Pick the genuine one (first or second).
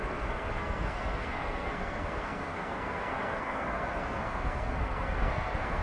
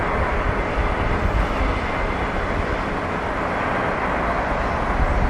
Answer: second